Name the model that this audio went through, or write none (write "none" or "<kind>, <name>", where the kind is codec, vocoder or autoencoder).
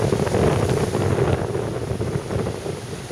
none